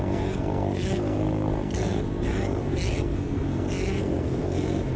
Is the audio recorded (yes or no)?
no